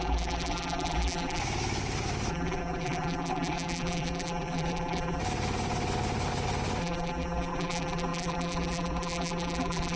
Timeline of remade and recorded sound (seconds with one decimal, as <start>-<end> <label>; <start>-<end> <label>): 0.0-1.4 remade; 1.4-2.3 recorded; 2.3-5.2 remade; 5.2-6.8 recorded; 6.8-10.0 remade